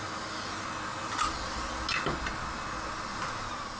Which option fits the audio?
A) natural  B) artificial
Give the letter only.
A